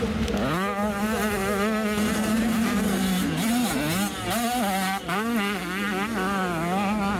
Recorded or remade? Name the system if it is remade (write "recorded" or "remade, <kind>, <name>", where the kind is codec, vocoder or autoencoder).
recorded